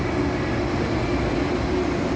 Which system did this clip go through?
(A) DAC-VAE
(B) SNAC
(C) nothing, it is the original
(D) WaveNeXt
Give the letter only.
C